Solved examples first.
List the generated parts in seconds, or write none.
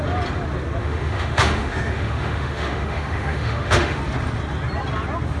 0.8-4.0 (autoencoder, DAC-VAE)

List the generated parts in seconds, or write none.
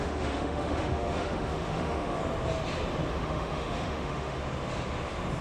0.0-2.2 (autoencoder, DAC-VAE); 3.1-4.4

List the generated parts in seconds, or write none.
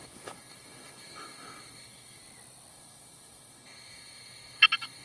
0.0-2.2 (autoencoder, DAC-VAE); 2.7-5.0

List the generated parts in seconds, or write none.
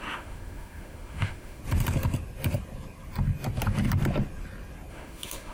0.0-1.6 (autoencoder, DAC-VAE); 4.9-5.5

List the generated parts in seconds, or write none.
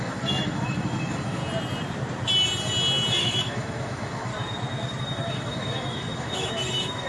0.0-1.4 (autoencoder, DAC-VAE); 3.2-4.3; 5.0-7.1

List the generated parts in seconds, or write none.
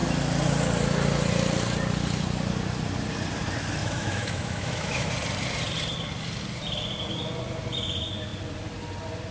3.8-5.1 (autoencoder, DAC-VAE)